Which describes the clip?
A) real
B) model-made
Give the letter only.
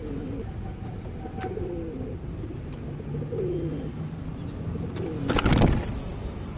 A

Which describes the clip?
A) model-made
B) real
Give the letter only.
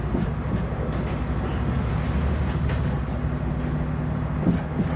B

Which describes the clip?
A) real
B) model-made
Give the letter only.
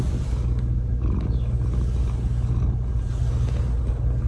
A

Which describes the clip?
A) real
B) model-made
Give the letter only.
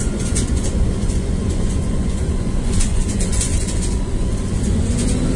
B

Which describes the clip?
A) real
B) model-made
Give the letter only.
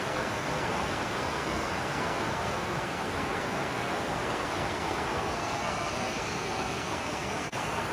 B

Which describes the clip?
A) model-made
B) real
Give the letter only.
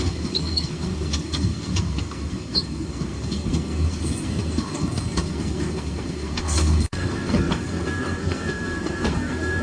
A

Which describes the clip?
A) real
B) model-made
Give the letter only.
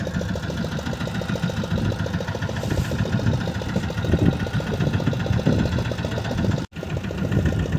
A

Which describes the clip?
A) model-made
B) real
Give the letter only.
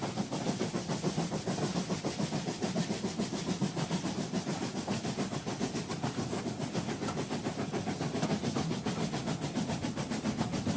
B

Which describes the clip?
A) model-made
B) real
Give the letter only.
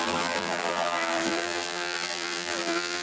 A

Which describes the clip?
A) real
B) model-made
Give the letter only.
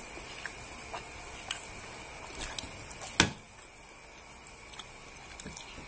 A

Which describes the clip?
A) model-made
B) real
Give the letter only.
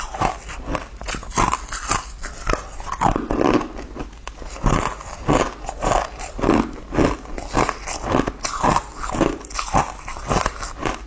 B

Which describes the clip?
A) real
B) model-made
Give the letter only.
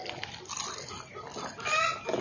A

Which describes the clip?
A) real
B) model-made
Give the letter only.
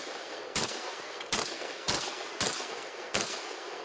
B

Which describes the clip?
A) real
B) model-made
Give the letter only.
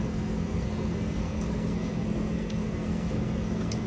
B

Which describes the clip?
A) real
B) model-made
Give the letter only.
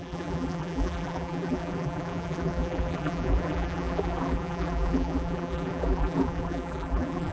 B